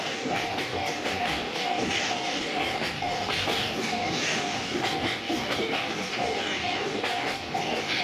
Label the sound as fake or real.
fake